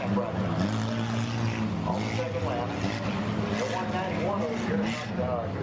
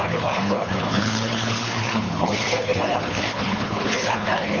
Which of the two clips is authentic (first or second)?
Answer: first